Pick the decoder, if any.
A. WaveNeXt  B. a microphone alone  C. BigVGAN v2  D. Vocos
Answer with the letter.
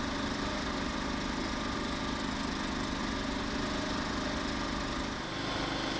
B